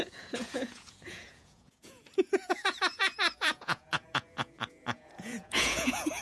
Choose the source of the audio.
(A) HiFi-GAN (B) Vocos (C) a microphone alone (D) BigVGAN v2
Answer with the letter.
B